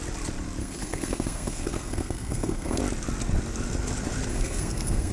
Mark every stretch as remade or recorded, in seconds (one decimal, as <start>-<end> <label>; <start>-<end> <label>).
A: 0.0-0.6 recorded; 0.6-2.8 remade; 2.8-4.3 recorded; 4.3-5.1 remade